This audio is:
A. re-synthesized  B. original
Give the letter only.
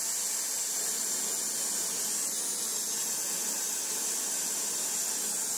B